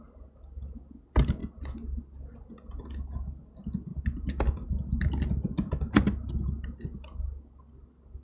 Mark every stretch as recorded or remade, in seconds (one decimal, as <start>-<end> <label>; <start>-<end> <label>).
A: 0.0-8.2 recorded